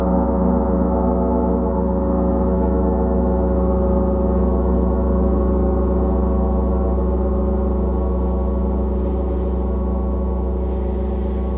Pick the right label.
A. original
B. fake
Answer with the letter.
A